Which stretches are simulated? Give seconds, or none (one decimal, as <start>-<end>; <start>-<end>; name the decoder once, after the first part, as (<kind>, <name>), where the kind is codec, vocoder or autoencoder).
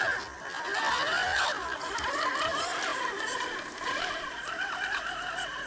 1.3-2.1 (vocoder, BigVGAN v2); 2.9-4.1